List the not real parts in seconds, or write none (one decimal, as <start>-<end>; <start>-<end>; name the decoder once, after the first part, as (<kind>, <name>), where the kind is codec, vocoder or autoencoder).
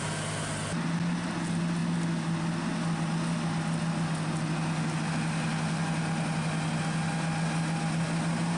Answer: none